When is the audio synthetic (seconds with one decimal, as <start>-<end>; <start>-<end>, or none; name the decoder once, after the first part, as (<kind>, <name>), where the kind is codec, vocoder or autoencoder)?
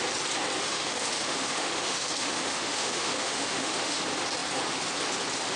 0.6-4.0 (autoencoder, DAC-VAE)